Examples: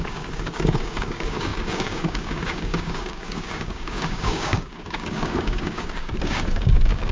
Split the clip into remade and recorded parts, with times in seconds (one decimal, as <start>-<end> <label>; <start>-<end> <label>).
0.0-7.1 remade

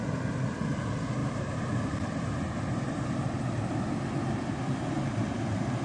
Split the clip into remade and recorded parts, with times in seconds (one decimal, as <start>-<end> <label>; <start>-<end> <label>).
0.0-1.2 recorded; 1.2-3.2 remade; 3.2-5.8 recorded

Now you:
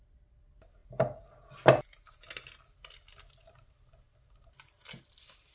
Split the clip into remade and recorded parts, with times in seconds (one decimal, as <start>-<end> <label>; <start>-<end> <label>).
0.0-5.5 recorded

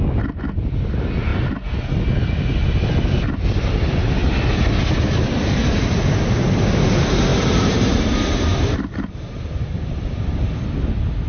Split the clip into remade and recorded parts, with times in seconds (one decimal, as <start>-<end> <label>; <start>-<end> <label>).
0.0-7.3 recorded; 7.3-8.1 remade; 8.1-8.5 recorded; 8.5-10.6 remade; 10.6-11.3 recorded